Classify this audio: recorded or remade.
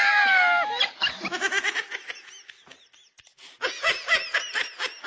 recorded